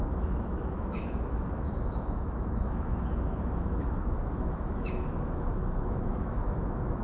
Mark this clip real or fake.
fake